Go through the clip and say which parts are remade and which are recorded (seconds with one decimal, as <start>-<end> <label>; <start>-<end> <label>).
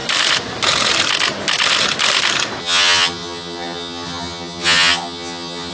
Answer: 0.0-2.6 recorded; 2.6-5.7 remade